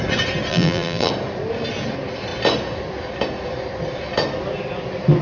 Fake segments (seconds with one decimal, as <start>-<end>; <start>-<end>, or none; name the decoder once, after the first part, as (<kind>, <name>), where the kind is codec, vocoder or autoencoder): 0.5-1.1 (vocoder, BigVGAN v2)